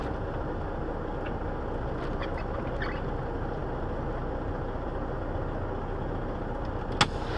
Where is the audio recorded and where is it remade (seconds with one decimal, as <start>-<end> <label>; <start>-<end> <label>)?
0.0-7.4 recorded